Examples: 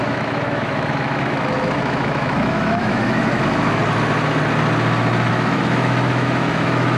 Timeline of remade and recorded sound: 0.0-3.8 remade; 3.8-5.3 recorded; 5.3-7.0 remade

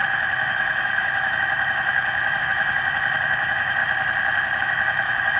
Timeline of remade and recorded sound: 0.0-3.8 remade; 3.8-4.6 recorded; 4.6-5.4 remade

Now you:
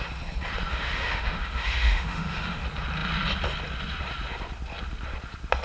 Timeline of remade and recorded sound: 0.0-0.7 recorded; 0.7-2.6 remade; 2.6-5.6 recorded

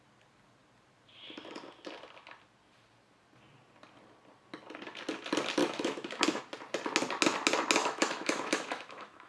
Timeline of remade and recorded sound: 0.0-5.6 recorded; 5.6-6.4 remade; 6.4-7.8 recorded; 7.8-9.3 remade

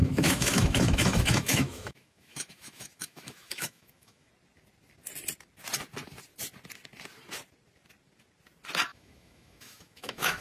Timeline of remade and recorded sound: 0.0-4.3 remade; 4.3-8.9 recorded; 8.9-10.4 remade

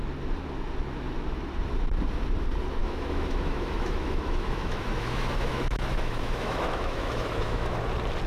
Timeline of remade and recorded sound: 0.0-2.8 recorded; 2.8-7.8 remade; 7.8-8.3 recorded

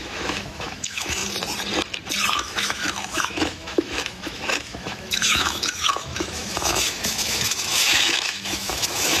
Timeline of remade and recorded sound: 0.0-1.2 remade; 1.2-2.3 recorded; 2.3-9.2 remade